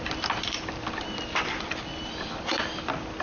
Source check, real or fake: real